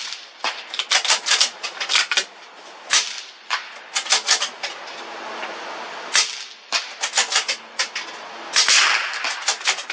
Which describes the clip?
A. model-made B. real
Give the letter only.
B